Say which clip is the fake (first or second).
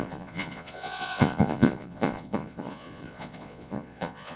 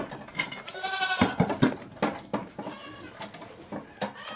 first